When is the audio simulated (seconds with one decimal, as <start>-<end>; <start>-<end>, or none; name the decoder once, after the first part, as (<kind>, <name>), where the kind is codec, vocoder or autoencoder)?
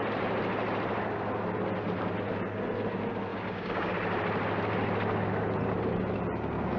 3.3-3.9 (codec, DAC)